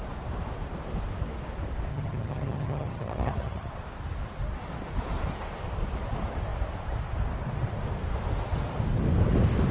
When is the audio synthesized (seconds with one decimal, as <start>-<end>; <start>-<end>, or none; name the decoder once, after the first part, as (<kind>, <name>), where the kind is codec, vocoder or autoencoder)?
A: 1.9-3.7 (vocoder, HiFi-GAN)